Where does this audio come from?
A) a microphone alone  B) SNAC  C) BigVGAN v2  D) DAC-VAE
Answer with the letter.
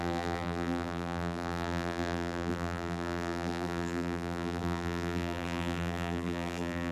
C